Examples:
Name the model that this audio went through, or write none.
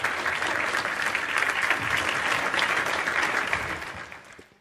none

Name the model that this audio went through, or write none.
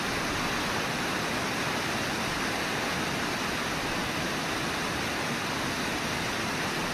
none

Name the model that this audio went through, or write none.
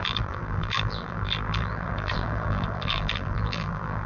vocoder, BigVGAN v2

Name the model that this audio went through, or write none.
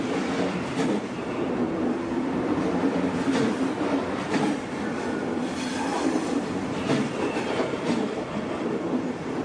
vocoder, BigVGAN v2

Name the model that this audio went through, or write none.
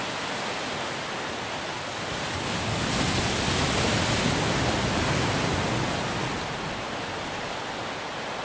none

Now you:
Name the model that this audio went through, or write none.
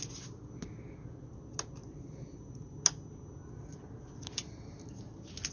none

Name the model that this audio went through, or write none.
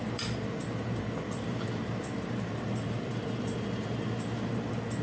vocoder, BigVGAN v2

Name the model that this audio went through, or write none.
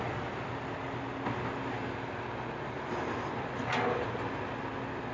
none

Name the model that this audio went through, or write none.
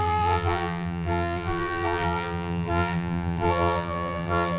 vocoder, BigVGAN v2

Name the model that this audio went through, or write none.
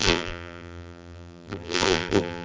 vocoder, BigVGAN v2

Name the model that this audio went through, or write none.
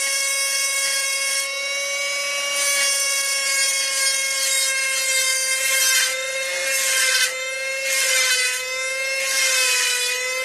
none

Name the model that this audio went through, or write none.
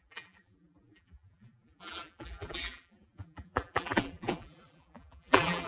vocoder, BigVGAN v2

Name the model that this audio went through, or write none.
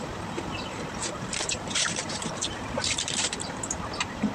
vocoder, BigVGAN v2